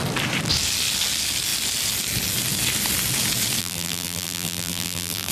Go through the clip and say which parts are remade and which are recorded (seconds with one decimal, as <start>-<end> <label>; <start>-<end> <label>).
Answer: 0.0-3.6 recorded; 3.6-5.3 remade